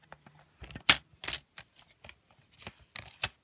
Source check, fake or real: real